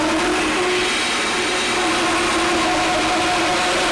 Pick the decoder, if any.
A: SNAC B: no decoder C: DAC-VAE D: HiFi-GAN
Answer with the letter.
B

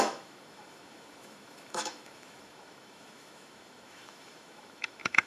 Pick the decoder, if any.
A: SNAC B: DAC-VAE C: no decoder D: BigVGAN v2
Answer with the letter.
B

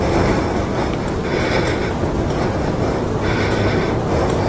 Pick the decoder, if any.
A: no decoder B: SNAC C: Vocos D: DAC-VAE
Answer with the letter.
A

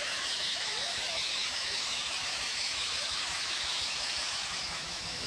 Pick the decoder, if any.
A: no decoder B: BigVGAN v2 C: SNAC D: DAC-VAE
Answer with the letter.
D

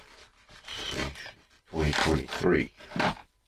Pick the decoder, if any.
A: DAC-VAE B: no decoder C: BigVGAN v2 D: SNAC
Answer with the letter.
B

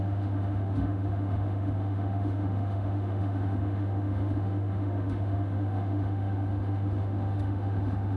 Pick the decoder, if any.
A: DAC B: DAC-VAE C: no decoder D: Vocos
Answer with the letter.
B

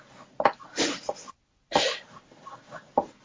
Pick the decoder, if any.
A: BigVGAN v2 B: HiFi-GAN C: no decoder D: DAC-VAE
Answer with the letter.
C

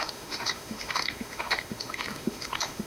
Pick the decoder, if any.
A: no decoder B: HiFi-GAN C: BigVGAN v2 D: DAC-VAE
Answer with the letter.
D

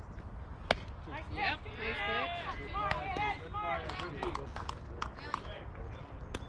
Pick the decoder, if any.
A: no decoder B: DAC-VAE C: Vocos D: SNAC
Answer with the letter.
A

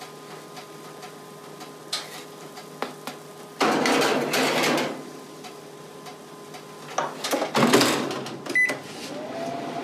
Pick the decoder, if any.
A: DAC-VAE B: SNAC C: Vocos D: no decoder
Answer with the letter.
D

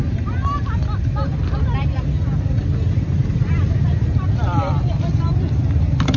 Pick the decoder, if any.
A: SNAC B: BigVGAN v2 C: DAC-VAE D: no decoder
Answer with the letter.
D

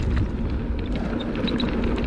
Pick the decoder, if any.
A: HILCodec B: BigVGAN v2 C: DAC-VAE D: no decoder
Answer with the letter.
D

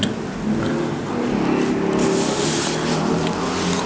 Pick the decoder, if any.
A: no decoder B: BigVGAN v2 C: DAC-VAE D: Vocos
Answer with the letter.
A